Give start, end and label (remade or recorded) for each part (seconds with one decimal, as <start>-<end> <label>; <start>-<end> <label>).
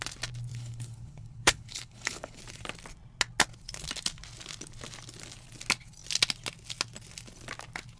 0.0-0.5 recorded; 0.5-2.4 remade; 2.4-8.0 recorded